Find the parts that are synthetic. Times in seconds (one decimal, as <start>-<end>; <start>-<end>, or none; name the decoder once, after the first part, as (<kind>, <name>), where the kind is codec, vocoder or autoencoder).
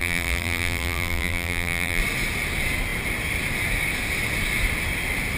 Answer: 0.0-2.0 (vocoder, BigVGAN v2)